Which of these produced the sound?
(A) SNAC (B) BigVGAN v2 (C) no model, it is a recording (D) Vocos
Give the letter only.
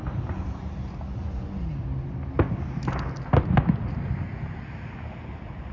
C